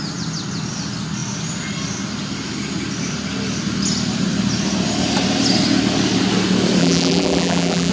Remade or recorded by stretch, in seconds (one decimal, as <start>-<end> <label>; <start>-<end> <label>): 0.0-6.8 recorded; 6.8-7.9 remade